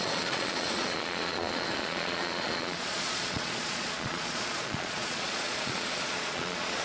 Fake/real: fake